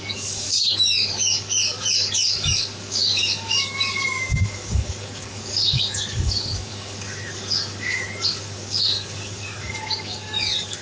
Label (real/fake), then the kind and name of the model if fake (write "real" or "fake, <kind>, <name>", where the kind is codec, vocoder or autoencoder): fake, codec, DAC